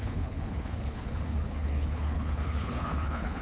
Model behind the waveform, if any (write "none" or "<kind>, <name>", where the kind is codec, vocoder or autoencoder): codec, HILCodec